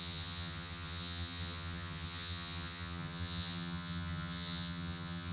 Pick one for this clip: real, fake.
fake